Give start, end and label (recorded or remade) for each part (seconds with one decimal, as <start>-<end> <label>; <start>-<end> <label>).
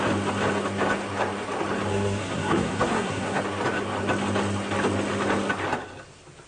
0.0-1.9 recorded; 1.9-3.4 remade; 3.4-6.5 recorded